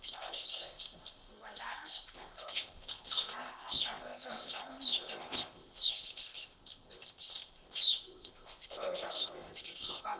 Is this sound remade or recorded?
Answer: remade